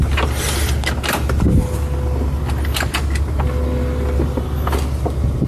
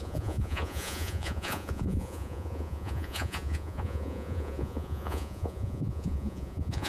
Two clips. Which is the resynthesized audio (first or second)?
second